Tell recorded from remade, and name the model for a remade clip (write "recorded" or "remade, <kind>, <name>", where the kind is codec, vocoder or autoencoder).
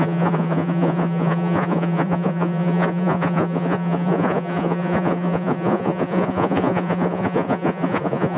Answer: remade, vocoder, Vocos